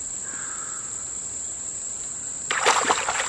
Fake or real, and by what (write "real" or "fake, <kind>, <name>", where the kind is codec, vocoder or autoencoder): fake, vocoder, BigVGAN v2